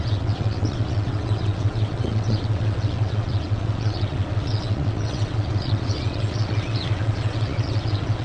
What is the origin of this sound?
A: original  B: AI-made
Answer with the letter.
B